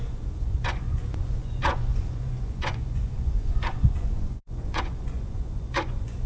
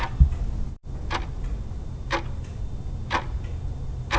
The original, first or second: second